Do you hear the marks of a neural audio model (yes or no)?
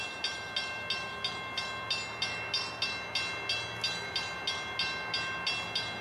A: no